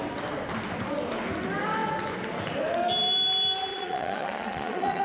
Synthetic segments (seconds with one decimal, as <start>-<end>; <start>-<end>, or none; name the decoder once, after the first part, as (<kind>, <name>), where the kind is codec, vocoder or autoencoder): 3.7-5.0 (vocoder, Vocos)